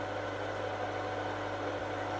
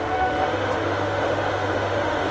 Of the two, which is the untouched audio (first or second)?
first